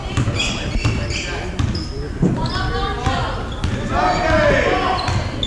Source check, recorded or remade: recorded